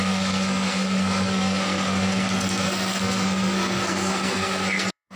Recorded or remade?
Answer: remade